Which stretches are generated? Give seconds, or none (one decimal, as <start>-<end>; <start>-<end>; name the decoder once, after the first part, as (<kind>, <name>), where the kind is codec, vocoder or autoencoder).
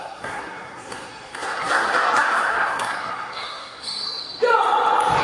0.0-4.2 (codec, SNAC)